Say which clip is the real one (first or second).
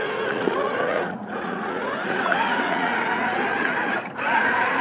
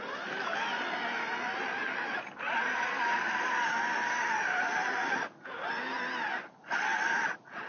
second